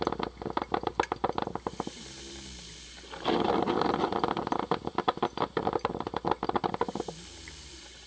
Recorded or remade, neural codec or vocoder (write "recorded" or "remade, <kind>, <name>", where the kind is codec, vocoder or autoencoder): recorded